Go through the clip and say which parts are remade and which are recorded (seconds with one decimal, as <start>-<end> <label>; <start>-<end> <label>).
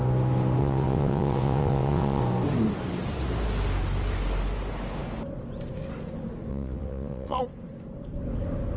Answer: 0.0-0.6 recorded; 0.6-2.2 remade; 2.2-6.5 recorded; 6.5-7.4 remade; 7.4-8.8 recorded